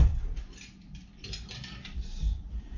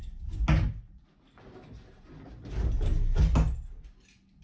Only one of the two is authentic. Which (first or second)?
second